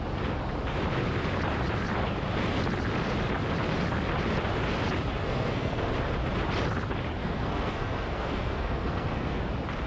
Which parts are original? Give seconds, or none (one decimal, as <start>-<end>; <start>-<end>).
0.0-5.2; 5.9-7.2; 9.4-9.9